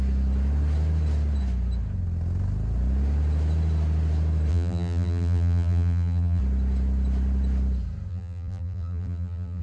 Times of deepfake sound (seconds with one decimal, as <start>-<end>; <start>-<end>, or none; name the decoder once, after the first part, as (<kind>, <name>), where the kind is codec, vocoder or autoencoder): 4.5-6.4 (vocoder, BigVGAN v2); 8.1-9.6